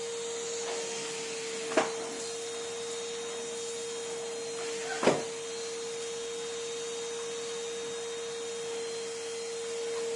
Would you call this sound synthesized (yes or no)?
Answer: no